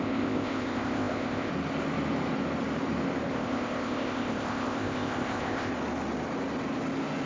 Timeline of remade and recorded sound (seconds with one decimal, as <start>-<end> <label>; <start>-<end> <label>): 0.0-1.5 remade; 1.5-3.3 recorded; 3.3-5.7 remade; 5.7-7.3 recorded

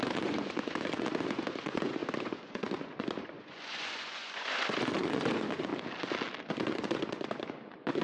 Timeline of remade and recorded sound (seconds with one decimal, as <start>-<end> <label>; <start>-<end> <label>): 0.0-5.7 remade; 5.7-6.5 recorded; 6.5-8.0 remade

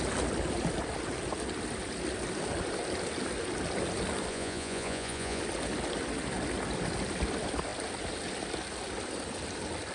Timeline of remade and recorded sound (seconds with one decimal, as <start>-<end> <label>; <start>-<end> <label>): 0.0-4.3 recorded; 4.3-5.4 remade; 5.4-9.9 recorded

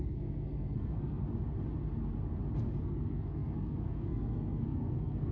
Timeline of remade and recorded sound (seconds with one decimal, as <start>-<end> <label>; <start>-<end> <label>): 0.0-1.2 remade; 1.2-2.8 recorded; 2.8-5.3 remade

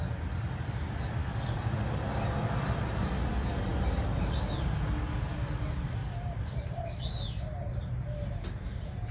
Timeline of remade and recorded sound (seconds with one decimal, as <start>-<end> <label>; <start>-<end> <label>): 0.0-9.1 recorded

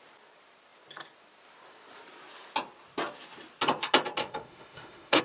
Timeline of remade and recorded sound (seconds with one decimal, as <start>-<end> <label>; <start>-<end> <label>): 0.0-4.2 recorded; 4.2-5.2 remade

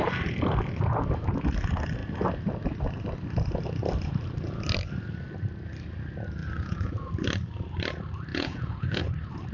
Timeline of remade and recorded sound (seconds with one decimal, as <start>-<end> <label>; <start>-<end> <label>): 0.0-6.4 recorded; 6.4-7.1 remade; 7.1-8.3 recorded; 8.3-9.0 remade; 9.0-9.5 recorded

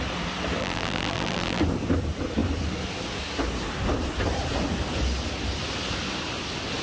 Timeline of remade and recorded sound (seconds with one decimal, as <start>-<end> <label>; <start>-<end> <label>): 0.0-0.6 recorded; 0.6-1.6 remade; 1.6-6.8 recorded